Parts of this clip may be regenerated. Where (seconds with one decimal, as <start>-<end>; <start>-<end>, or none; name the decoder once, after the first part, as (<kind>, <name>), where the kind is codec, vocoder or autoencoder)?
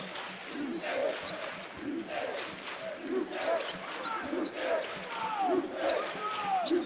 none